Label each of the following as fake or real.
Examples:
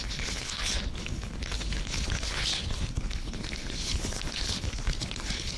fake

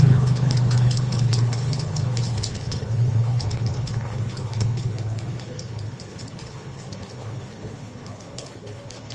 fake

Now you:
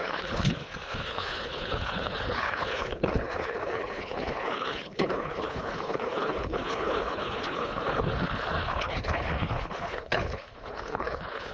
fake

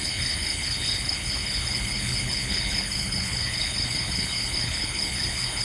fake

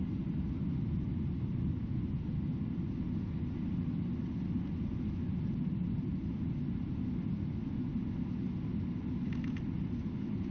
real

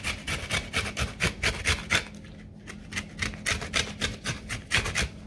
real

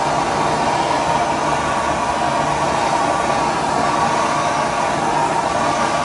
real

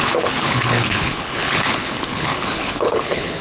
fake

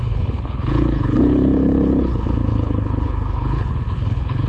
fake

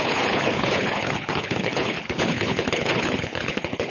fake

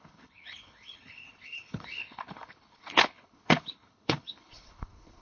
fake